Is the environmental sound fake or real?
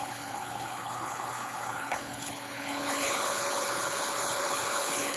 fake